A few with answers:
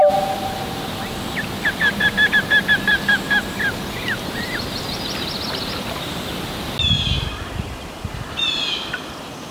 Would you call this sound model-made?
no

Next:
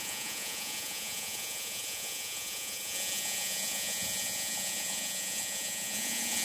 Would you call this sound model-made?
yes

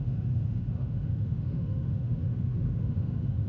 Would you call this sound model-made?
yes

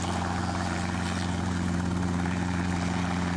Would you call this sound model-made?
yes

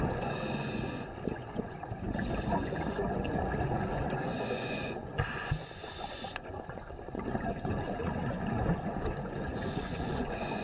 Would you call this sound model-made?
yes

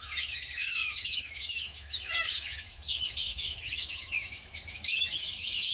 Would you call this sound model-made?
yes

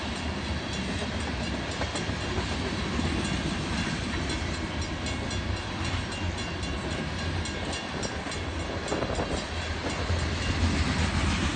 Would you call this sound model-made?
no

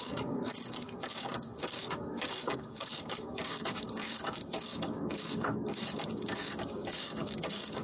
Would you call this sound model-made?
yes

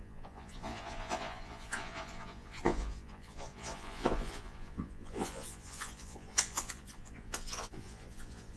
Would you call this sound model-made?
yes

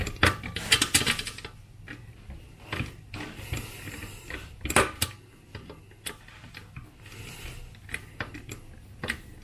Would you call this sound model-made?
no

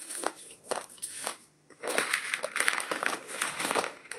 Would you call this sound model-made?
yes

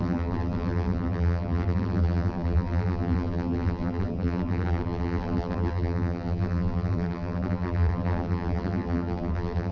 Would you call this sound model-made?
yes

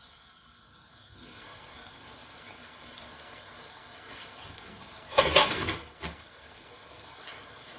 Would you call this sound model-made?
yes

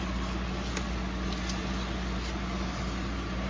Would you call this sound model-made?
no